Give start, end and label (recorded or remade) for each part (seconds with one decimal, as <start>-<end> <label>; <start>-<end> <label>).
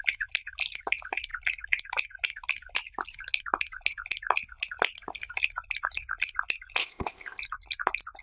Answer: 0.0-6.8 recorded; 6.8-7.4 remade; 7.4-8.2 recorded